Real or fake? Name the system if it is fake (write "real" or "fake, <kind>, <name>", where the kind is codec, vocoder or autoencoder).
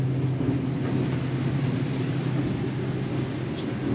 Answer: real